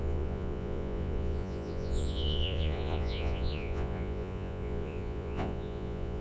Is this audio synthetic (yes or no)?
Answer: yes